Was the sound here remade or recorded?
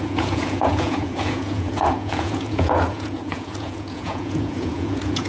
remade